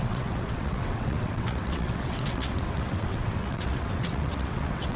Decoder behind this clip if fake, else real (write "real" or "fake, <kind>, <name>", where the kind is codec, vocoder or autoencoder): fake, vocoder, WaveNeXt